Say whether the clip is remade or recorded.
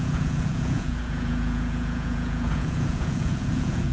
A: remade